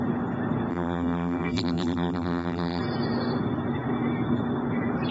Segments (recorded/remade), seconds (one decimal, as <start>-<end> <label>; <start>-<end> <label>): 0.0-0.7 recorded; 0.7-2.8 remade; 2.8-5.1 recorded